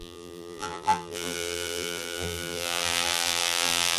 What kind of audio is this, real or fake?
fake